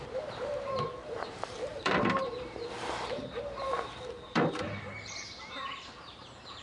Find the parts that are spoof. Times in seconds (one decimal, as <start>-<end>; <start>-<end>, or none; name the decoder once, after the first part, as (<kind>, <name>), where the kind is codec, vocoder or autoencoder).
0.0-6.6 (vocoder, BigVGAN v2)